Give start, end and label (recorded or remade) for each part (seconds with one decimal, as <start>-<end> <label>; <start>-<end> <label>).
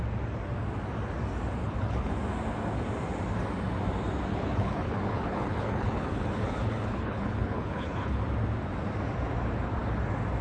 0.0-1.6 recorded; 1.6-2.1 remade; 2.1-4.3 recorded; 4.3-8.2 remade; 8.2-10.4 recorded